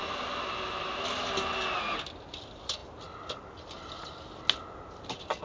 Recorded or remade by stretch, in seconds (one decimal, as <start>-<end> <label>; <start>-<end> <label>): 0.0-5.4 recorded